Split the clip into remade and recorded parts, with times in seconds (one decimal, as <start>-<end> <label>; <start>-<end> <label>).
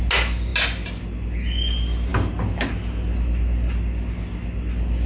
0.0-5.1 recorded